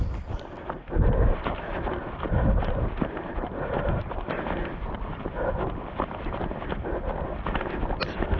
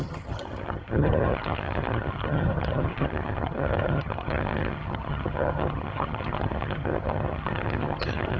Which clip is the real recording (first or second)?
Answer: first